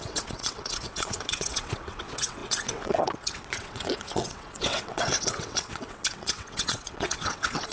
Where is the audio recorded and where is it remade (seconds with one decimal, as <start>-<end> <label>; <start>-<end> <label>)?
0.0-7.7 remade